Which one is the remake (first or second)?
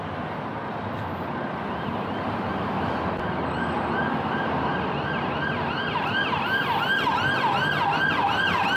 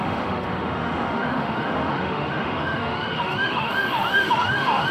second